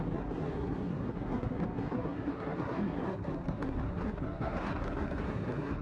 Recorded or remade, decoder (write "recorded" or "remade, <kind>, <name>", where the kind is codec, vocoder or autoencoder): remade, codec, SNAC